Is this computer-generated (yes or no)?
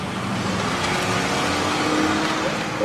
no